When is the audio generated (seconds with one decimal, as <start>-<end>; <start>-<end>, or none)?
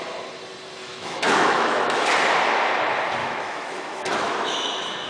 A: 0.9-2.1; 3.2-5.1